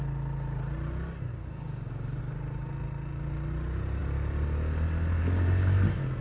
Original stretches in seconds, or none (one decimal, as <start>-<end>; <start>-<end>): 0.0-1.3; 2.2-6.2